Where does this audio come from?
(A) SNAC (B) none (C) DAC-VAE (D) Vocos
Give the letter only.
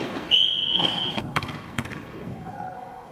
A